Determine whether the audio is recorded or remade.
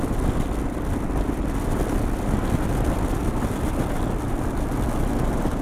recorded